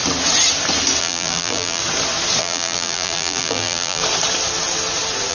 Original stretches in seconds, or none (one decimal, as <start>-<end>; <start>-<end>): 0.0-1.0; 1.8-2.4; 4.0-5.3